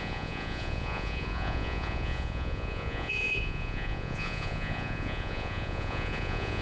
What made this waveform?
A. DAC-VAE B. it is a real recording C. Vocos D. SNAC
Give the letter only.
C